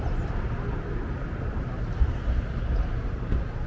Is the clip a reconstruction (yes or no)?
no